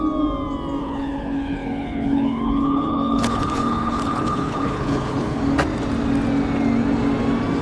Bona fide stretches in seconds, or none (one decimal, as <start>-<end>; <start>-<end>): 0.0-0.8; 5.4-7.6